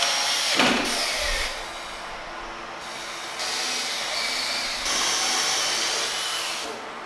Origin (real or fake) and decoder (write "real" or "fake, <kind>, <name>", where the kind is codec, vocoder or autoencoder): real